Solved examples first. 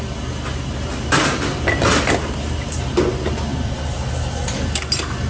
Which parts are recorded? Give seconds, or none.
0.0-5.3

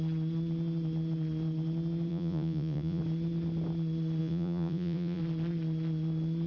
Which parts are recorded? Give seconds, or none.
0.0-2.1; 3.0-4.2; 5.2-6.5

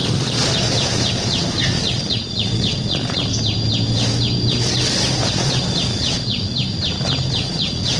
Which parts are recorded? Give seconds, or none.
3.3-5.3; 6.5-7.3